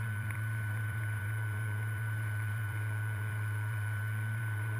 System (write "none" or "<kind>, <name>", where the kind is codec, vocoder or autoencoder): vocoder, BigVGAN v2